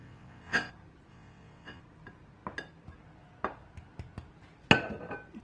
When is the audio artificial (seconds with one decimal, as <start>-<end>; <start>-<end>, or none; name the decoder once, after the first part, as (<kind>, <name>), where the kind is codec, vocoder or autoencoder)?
0.0-0.7 (vocoder, WaveNeXt); 1.1-1.8